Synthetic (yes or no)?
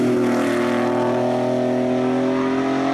no